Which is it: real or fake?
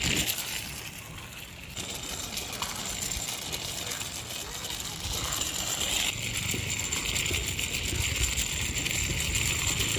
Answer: real